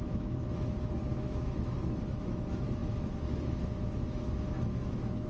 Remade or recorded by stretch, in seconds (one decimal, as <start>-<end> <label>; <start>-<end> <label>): 0.0-5.3 remade